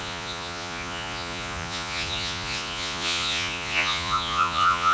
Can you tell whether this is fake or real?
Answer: fake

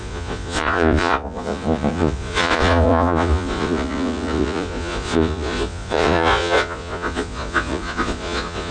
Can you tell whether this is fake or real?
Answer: fake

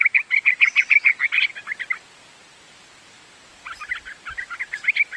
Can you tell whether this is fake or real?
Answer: real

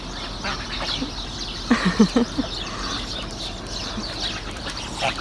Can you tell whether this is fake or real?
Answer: real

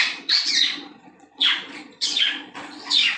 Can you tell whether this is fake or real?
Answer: fake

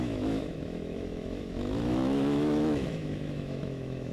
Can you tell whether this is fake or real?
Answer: fake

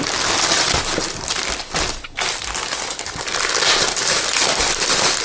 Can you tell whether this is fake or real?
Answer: fake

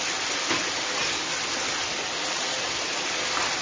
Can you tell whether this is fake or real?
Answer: real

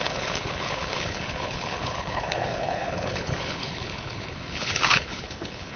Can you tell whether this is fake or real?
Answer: fake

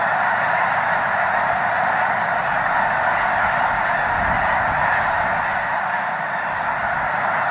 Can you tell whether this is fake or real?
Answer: real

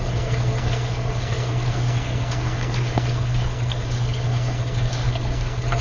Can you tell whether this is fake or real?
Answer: fake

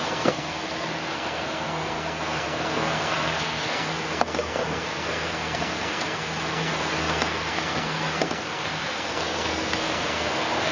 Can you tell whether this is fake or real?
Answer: fake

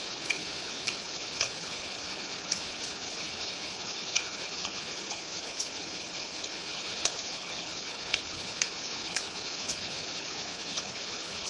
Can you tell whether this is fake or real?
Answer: fake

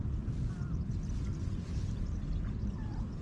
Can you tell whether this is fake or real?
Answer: real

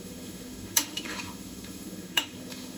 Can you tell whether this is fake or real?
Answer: fake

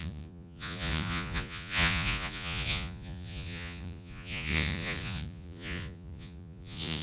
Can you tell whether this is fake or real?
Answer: fake